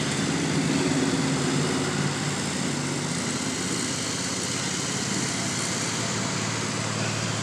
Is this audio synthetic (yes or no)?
no